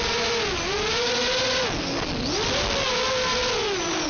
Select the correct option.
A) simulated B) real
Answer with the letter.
B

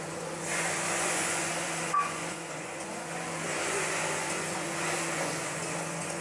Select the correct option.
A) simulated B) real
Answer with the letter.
A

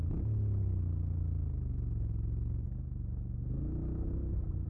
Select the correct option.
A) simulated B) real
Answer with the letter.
B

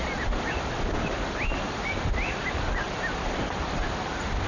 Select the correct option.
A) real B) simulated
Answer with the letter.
A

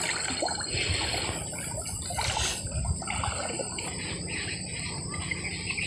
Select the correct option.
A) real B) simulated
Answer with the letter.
A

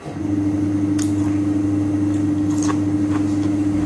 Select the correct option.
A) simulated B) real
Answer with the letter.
B